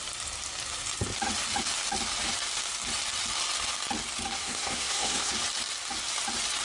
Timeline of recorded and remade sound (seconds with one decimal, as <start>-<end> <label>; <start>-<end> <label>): 0.0-4.4 recorded; 4.4-5.3 remade; 5.3-6.6 recorded